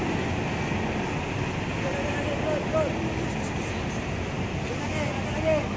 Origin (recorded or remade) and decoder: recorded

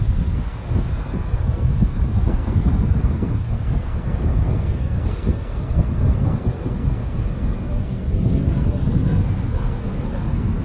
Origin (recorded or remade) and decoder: remade, codec, SNAC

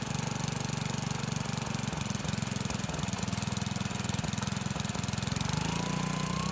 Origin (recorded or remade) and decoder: recorded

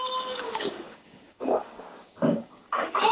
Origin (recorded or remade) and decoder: remade, codec, DAC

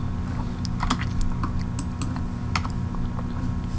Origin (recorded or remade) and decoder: recorded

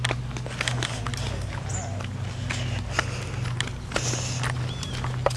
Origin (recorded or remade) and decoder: recorded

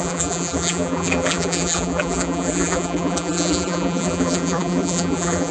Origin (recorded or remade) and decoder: remade, vocoder, BigVGAN v2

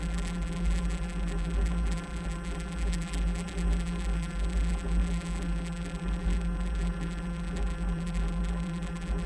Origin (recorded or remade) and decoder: remade, vocoder, BigVGAN v2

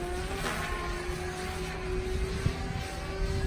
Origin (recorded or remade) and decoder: recorded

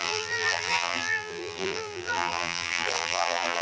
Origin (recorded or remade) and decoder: remade, vocoder, BigVGAN v2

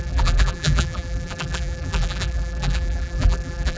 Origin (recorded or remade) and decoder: remade, vocoder, BigVGAN v2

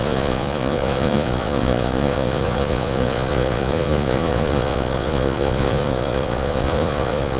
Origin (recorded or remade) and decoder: remade, vocoder, Vocos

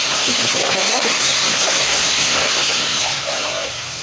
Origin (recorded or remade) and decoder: remade, codec, SNAC